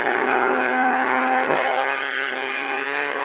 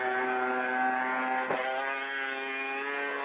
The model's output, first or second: first